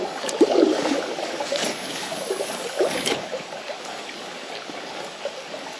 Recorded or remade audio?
remade